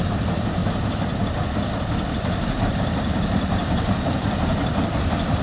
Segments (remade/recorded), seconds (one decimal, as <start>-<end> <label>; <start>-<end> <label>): 0.0-0.6 remade; 0.6-2.1 recorded; 2.1-5.4 remade